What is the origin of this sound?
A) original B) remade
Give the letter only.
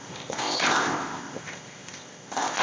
B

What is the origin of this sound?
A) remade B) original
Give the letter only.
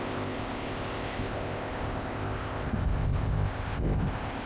A